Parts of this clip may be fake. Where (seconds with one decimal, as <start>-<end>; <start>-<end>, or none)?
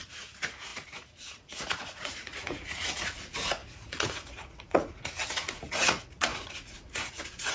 0.0-7.5